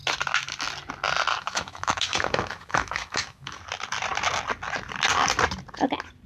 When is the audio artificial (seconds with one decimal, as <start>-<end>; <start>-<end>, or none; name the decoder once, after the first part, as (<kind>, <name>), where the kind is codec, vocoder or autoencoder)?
1.4-3.6 (autoencoder, DAC-VAE)

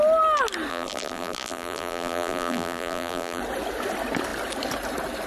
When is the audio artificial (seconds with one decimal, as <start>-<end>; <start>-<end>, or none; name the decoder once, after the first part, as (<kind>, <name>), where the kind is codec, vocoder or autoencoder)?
0.7-3.4 (vocoder, BigVGAN v2)

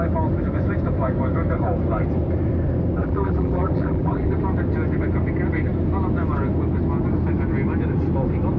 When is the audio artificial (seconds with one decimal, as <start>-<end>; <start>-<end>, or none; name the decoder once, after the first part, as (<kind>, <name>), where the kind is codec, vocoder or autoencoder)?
3.0-4.3 (vocoder, BigVGAN v2)